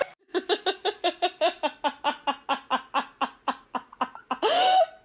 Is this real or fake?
real